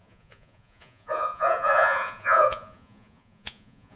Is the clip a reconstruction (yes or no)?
yes